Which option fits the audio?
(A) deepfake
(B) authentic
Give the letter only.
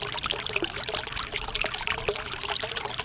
B